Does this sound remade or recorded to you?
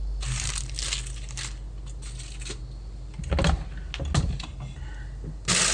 recorded